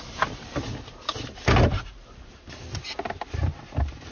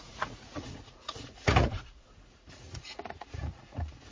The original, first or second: first